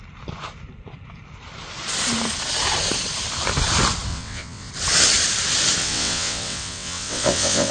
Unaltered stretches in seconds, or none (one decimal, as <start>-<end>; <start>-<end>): 0.0-4.1; 4.7-5.8